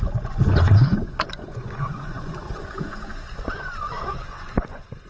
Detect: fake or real fake